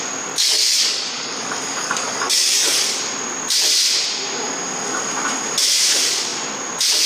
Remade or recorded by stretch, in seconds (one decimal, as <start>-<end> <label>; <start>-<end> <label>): 0.0-0.4 recorded; 0.4-3.0 remade; 3.0-7.1 recorded